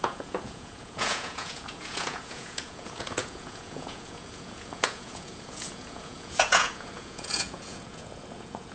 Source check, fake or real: fake